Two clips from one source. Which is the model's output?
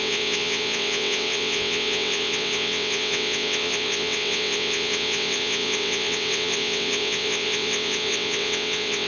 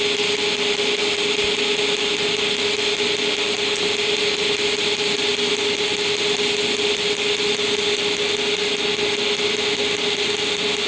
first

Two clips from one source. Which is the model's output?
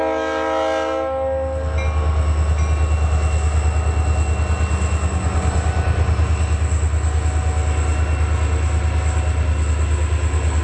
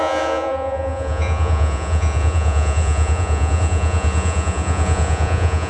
second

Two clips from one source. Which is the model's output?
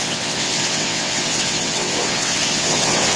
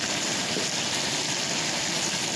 first